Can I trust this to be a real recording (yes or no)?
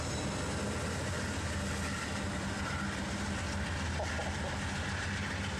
yes